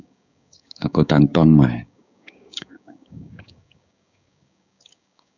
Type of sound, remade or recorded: remade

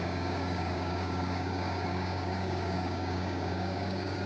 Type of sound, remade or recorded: remade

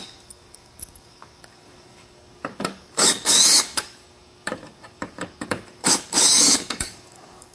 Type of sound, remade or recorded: remade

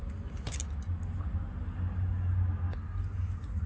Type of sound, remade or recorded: recorded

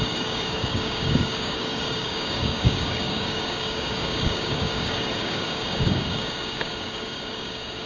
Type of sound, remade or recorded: remade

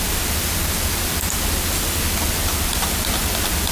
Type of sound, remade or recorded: recorded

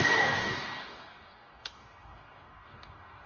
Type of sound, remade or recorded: remade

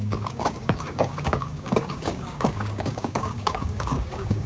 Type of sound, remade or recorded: remade